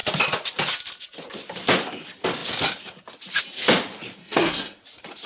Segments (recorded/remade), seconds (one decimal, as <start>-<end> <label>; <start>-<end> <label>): 0.0-4.2 recorded; 4.2-4.8 remade; 4.8-5.3 recorded